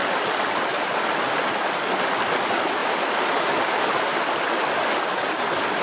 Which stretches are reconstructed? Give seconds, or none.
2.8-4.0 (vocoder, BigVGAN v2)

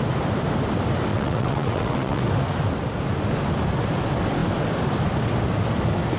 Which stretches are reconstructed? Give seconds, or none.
1.1-2.2 (vocoder, WaveNeXt)